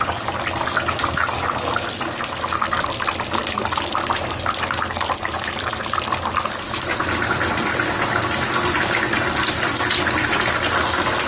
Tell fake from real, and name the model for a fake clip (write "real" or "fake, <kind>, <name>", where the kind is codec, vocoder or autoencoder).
real